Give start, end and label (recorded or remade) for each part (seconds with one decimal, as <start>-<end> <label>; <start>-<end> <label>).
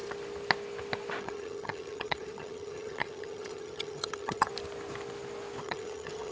0.0-1.2 recorded; 1.2-4.5 remade; 4.5-5.6 recorded; 5.6-6.3 remade